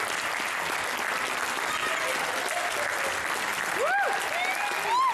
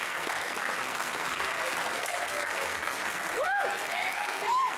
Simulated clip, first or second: second